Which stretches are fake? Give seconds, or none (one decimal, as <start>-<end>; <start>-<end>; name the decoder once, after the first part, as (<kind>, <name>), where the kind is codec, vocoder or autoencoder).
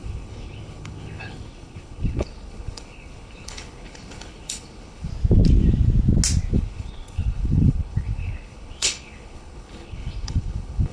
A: 0.0-5.1 (codec, HILCodec); 6.5-10.9